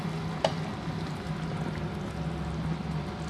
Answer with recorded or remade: recorded